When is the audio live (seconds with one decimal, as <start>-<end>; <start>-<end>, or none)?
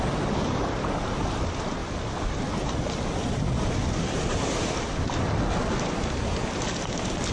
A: 0.0-7.3